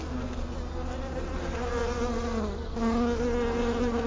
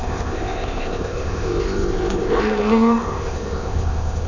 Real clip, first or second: first